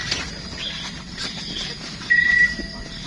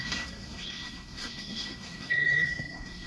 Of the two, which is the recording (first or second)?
first